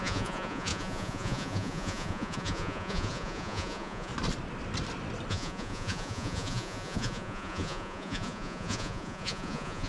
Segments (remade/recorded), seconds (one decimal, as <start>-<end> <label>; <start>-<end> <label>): 0.0-4.1 remade; 4.1-5.3 recorded; 5.3-9.9 remade